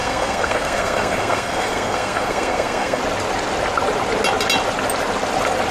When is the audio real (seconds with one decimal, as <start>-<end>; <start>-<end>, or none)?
3.0-5.7